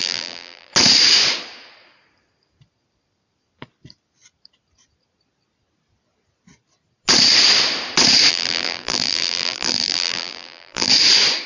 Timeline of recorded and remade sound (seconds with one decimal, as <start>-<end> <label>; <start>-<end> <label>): 0.0-0.7 remade; 0.7-8.3 recorded; 8.3-10.9 remade; 10.9-11.5 recorded